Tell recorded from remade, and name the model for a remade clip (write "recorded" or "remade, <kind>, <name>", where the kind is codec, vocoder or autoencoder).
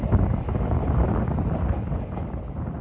recorded